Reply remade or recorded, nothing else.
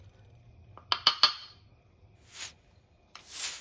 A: recorded